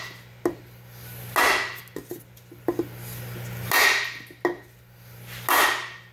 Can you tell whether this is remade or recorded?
recorded